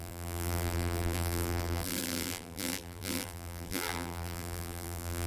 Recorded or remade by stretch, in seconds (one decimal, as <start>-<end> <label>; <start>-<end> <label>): 0.0-5.3 remade